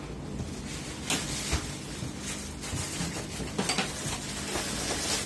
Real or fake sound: real